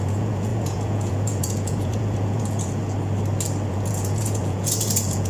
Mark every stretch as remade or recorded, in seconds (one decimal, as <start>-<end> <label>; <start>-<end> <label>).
0.0-2.8 remade; 2.8-3.7 recorded; 3.7-5.3 remade